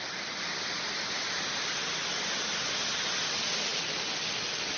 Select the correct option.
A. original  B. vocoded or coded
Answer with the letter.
A